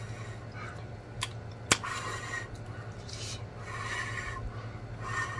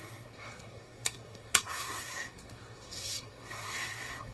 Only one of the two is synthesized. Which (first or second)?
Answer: second